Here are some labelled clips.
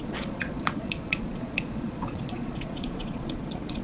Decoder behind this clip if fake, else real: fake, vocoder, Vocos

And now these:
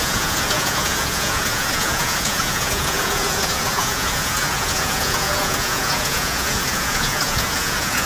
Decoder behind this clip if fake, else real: fake, vocoder, Vocos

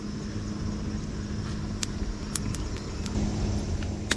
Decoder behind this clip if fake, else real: real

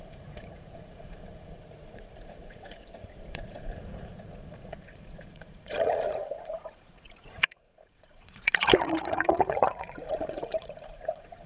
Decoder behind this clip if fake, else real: fake, vocoder, Vocos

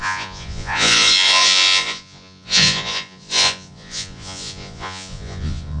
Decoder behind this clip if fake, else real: fake, vocoder, Vocos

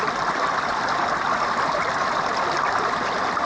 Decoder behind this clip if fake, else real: real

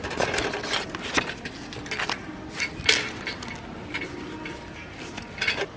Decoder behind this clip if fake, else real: real